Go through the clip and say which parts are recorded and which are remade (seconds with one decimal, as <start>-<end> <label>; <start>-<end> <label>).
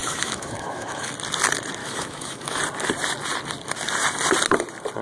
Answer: 0.0-1.1 remade; 1.1-1.8 recorded; 1.8-2.6 remade; 2.6-5.0 recorded